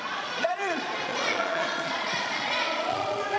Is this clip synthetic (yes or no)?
yes